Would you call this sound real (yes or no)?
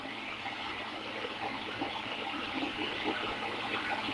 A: no